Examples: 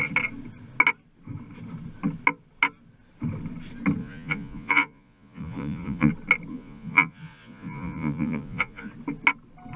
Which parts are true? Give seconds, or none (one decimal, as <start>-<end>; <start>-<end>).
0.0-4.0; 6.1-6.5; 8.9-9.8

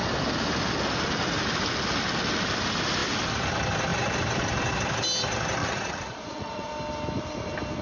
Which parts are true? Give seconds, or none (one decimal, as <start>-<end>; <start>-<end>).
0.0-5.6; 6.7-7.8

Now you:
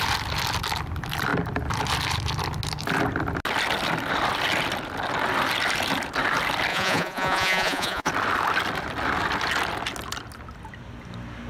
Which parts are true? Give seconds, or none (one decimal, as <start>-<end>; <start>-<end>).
0.0-6.7; 8.1-11.5

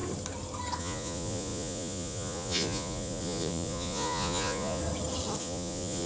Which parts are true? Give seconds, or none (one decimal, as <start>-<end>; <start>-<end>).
0.0-0.8; 4.8-5.4

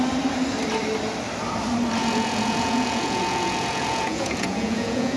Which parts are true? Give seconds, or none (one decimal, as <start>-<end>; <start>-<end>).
0.0-2.0